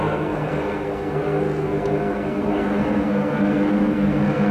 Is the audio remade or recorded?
remade